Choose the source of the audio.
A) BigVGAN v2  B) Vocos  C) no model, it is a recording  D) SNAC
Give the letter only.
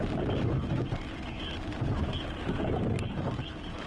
C